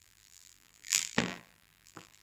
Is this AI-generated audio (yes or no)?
yes